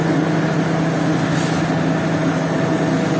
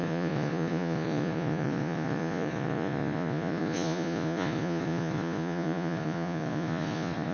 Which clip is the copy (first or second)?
second